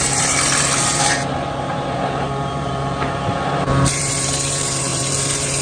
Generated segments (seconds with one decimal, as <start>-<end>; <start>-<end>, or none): 0.0-5.6